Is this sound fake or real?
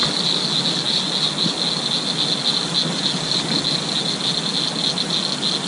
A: real